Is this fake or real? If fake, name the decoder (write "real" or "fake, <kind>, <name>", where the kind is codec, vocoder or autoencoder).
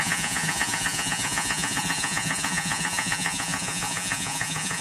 fake, vocoder, Vocos